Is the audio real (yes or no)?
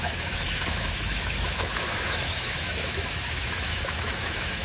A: no